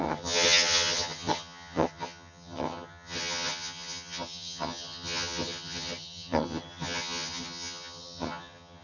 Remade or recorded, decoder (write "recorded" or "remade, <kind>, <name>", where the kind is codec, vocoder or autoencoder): remade, vocoder, HiFi-GAN